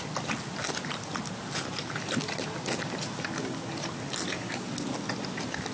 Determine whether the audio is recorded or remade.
recorded